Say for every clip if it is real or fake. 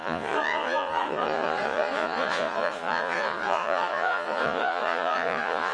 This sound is fake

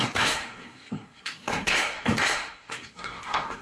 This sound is fake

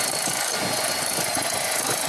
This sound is fake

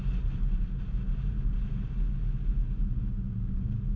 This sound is real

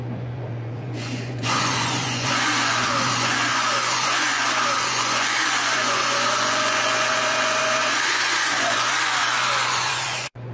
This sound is fake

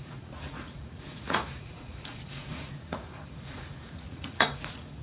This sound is fake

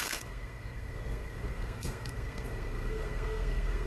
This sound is fake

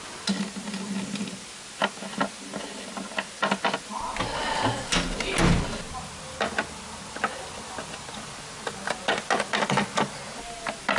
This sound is real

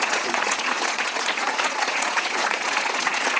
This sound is fake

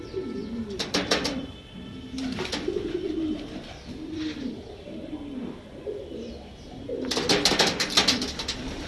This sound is fake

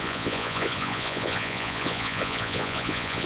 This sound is fake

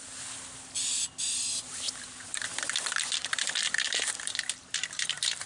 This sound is fake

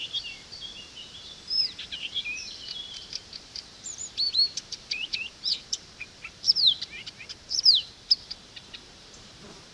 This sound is fake